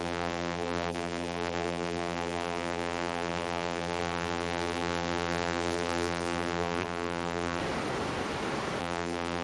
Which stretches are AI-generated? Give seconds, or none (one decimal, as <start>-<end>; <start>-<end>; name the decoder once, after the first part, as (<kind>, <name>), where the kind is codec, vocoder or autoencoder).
0.0-7.6 (vocoder, BigVGAN v2); 8.8-9.4